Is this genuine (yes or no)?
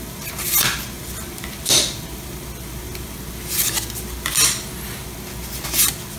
yes